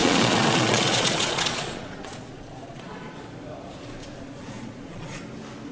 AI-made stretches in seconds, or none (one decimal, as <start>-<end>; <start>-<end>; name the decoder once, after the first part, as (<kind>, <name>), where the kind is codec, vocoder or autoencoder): 0.0-3.2 (vocoder, Vocos); 4.0-5.2